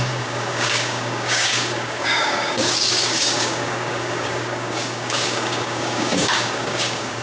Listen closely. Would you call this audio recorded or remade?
remade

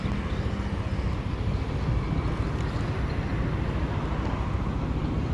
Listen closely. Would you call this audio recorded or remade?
recorded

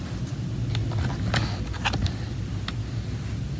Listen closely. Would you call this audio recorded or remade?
recorded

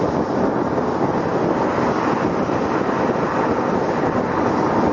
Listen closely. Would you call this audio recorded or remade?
recorded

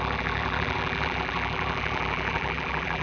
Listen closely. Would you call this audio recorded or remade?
remade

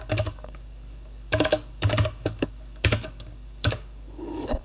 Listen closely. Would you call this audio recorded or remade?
remade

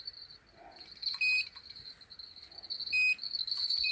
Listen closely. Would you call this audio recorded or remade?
recorded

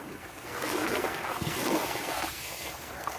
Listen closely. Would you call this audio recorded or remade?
remade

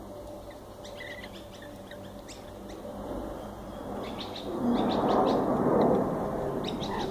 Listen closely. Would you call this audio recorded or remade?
recorded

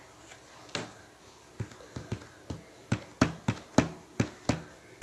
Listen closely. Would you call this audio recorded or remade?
recorded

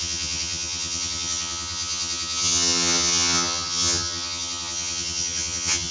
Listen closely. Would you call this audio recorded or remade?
remade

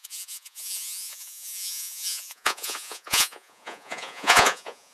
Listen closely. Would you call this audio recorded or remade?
remade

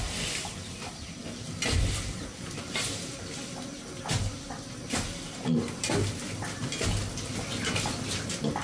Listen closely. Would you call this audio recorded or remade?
recorded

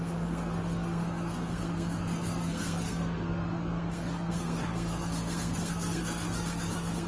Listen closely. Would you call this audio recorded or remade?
remade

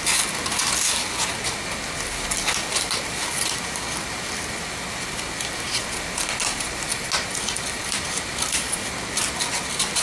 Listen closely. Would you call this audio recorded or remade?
recorded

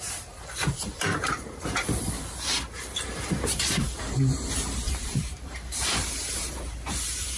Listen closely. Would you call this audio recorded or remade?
remade